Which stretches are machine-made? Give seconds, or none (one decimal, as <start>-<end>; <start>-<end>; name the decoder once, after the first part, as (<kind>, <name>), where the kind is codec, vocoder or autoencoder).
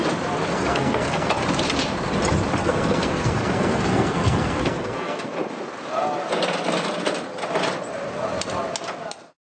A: 0.5-1.3 (codec, SNAC); 2.6-5.3